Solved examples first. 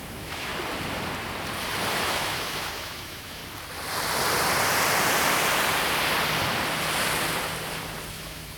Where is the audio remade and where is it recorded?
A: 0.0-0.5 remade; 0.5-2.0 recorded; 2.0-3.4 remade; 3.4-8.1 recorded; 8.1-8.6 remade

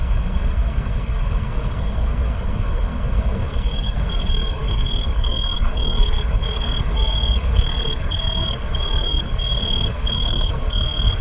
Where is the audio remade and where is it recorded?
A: 0.0-11.2 remade

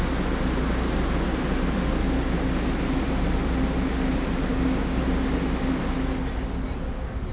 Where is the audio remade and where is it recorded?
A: 0.0-4.5 recorded; 4.5-5.1 remade; 5.1-7.3 recorded

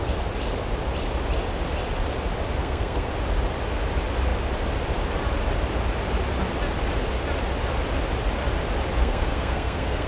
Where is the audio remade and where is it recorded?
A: 0.0-2.6 recorded; 2.6-3.1 remade; 3.1-9.0 recorded; 9.0-10.1 remade

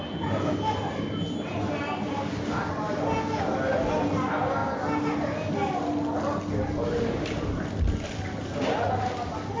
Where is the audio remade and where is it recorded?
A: 0.0-9.6 recorded

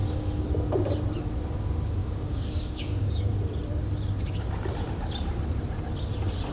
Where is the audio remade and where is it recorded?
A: 0.0-2.0 recorded; 2.0-3.3 remade; 3.3-6.5 recorded

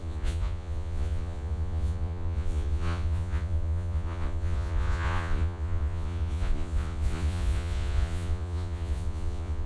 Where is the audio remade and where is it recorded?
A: 0.0-9.7 remade

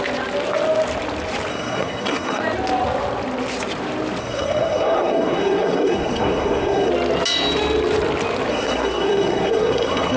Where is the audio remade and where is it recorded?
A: 0.0-1.5 recorded; 1.5-2.4 remade; 2.4-4.2 recorded; 4.2-6.9 remade; 6.9-8.5 recorded; 8.5-10.2 remade